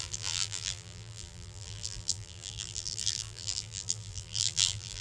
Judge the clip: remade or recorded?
remade